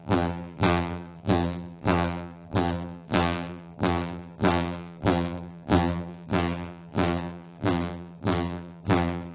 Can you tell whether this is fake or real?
fake